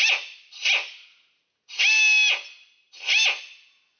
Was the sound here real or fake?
real